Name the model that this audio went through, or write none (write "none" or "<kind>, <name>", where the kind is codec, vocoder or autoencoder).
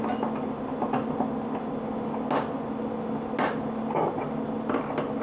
none